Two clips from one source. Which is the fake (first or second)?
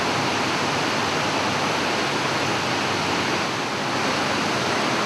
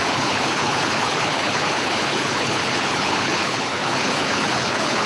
second